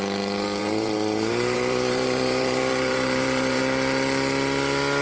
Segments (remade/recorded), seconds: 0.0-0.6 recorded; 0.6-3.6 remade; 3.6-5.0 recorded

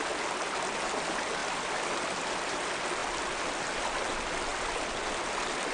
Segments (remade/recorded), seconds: 0.0-5.7 recorded

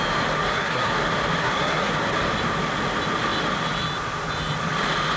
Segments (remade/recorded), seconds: 0.0-0.4 recorded; 0.4-0.9 remade; 0.9-1.4 recorded; 1.4-1.9 remade; 1.9-5.2 recorded

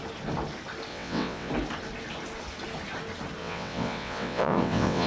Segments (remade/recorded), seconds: 0.0-0.9 recorded; 0.9-1.5 remade; 1.5-3.4 recorded; 3.4-5.1 remade